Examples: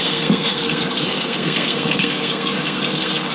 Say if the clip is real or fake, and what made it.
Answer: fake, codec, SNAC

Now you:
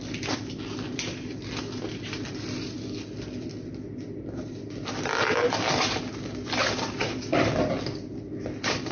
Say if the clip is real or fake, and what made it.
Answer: fake, vocoder, BigVGAN v2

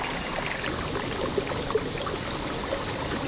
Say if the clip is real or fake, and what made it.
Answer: real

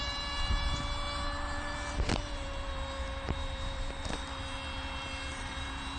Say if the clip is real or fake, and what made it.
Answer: fake, vocoder, BigVGAN v2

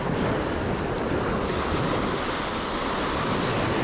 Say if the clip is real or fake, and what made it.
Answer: real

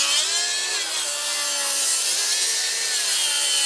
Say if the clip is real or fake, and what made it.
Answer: real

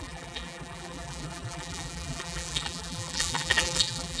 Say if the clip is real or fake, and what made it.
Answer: fake, vocoder, BigVGAN v2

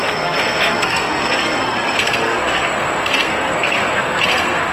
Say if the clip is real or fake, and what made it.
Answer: fake, codec, SNAC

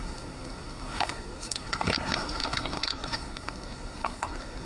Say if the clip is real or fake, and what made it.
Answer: fake, codec, SNAC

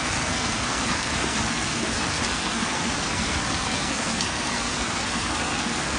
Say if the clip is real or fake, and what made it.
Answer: fake, codec, SNAC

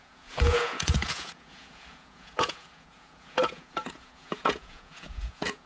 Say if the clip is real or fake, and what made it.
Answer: fake, vocoder, Vocos